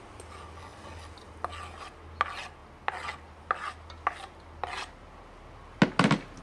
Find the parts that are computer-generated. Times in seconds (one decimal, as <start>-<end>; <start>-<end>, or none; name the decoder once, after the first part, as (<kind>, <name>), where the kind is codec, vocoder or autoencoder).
none